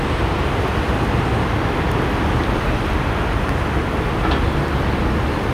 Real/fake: fake